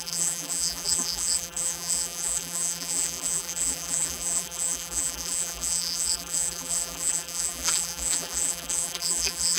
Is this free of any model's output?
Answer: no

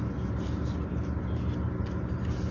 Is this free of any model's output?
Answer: yes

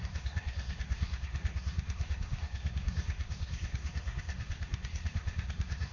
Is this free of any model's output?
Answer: no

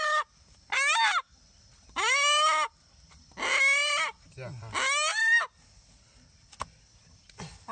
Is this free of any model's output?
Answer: yes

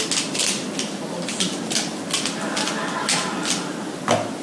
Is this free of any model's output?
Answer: yes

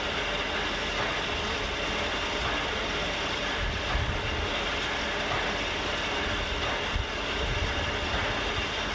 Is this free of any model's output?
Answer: yes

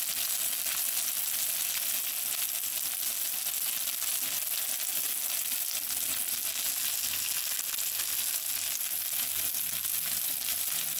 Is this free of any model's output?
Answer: yes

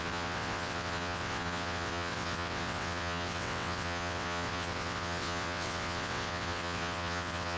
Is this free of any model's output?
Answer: no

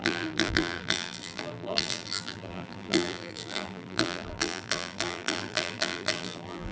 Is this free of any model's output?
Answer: no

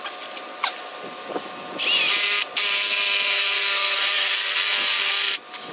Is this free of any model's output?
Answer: yes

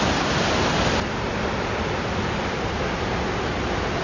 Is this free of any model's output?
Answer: yes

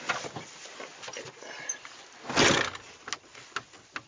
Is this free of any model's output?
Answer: yes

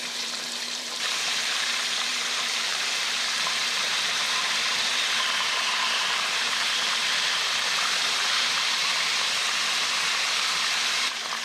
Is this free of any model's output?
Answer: no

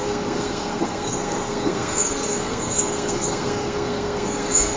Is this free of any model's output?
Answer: no